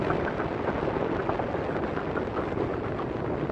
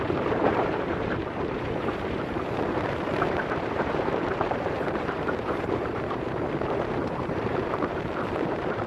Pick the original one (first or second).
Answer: first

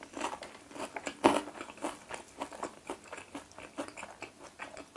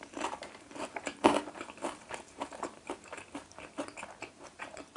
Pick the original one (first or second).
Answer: first